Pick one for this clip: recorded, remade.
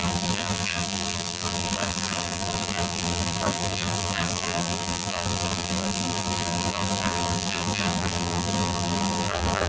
remade